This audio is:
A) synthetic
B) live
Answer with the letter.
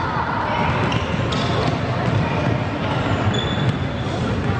B